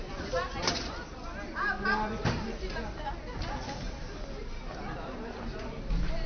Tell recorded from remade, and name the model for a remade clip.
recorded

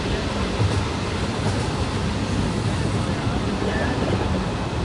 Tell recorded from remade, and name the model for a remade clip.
recorded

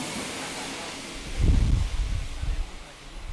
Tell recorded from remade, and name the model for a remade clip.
recorded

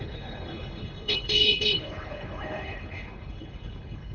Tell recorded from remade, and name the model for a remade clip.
remade, codec, HILCodec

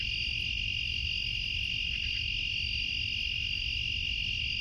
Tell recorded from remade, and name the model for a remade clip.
recorded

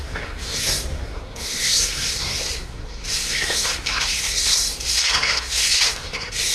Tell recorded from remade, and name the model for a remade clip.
remade, codec, SNAC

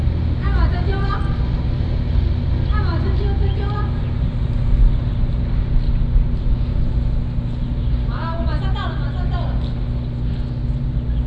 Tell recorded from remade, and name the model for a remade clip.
recorded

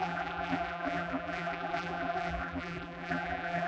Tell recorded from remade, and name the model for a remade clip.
remade, vocoder, BigVGAN v2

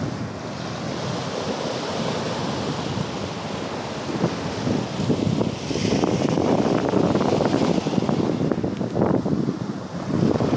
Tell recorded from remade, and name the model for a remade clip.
recorded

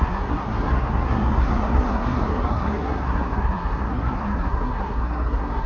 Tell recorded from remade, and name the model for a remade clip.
remade, codec, SNAC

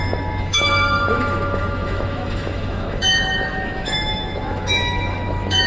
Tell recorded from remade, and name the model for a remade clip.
remade, autoencoder, DAC-VAE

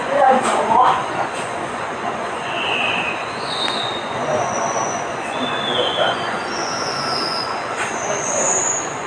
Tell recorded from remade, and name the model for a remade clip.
remade, vocoder, Vocos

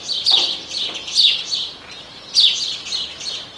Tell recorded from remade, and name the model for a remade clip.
recorded